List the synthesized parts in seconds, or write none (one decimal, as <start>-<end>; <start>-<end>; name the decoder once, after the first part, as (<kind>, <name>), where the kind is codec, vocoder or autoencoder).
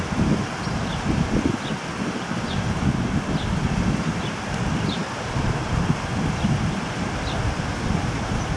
0.0-0.9 (vocoder, BigVGAN v2); 2.5-8.6